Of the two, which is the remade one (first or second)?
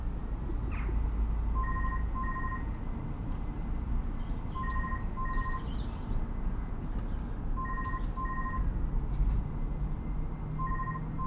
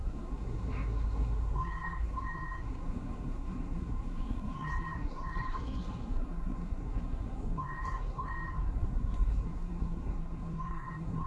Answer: second